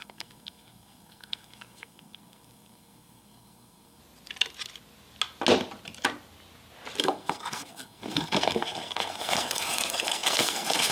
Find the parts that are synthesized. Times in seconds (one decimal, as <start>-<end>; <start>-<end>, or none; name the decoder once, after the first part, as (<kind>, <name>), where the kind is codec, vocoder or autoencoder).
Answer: 0.0-4.0 (codec, SNAC); 7.0-10.9